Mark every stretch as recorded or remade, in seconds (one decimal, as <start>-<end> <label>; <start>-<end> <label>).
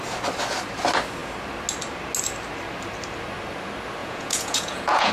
0.0-4.0 recorded; 4.0-5.1 remade